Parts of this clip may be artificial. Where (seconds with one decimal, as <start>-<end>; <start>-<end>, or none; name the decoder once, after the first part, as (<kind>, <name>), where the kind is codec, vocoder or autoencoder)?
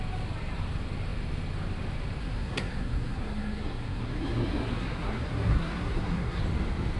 2.2-6.4 (codec, SNAC)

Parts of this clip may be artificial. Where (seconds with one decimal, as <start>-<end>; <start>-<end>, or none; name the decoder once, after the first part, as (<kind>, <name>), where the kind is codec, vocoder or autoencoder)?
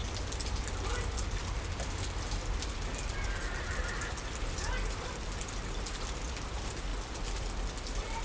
6.9-8.2 (vocoder, BigVGAN v2)